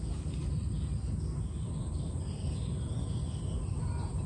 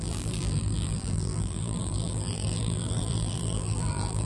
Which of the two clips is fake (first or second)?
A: second